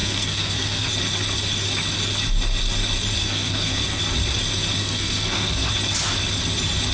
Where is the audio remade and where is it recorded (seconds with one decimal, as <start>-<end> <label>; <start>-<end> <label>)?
0.0-0.9 remade; 0.9-3.2 recorded; 3.2-4.0 remade; 4.0-4.8 recorded; 4.8-5.7 remade; 5.7-6.9 recorded